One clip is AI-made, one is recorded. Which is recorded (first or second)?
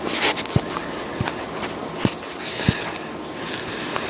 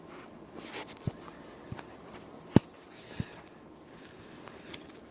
first